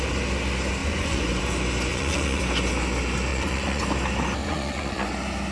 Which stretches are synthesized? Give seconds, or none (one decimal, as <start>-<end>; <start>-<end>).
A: 0.8-1.4; 1.9-2.4; 3.3-3.8; 4.4-5.1